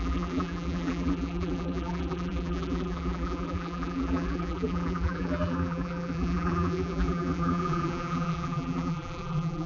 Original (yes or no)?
no